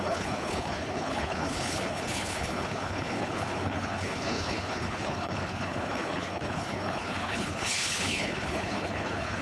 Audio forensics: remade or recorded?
remade